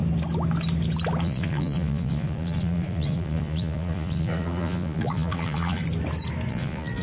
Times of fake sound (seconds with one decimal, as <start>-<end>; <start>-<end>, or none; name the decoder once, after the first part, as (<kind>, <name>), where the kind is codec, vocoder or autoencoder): 1.2-5.8 (vocoder, Vocos); 6.5-7.0